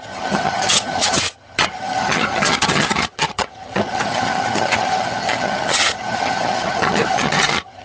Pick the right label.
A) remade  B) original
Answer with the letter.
A